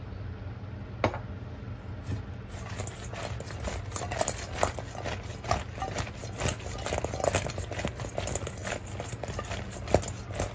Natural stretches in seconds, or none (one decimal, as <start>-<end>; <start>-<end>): 0.0-10.5